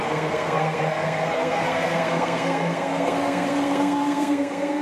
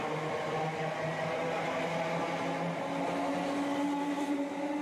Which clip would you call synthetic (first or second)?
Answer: first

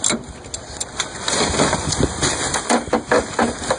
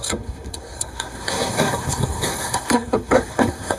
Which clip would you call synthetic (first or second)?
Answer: second